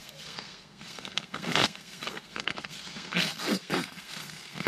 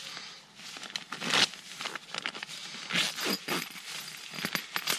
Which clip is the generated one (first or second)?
first